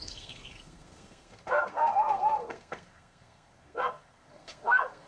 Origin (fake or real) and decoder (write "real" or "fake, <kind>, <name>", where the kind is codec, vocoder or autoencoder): fake, codec, SNAC